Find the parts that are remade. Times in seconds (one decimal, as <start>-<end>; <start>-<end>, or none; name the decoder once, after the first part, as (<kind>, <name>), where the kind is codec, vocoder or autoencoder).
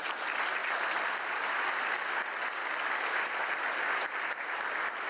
none